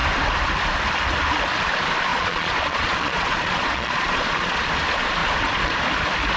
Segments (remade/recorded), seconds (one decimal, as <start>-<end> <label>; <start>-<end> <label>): 0.0-2.1 recorded; 2.1-4.6 remade; 4.6-5.2 recorded; 5.2-5.8 remade; 5.8-6.4 recorded